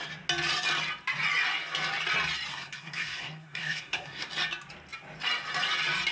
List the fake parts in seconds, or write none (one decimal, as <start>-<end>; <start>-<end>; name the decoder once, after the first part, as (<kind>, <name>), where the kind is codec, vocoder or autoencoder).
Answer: 2.5-4.3 (codec, SNAC)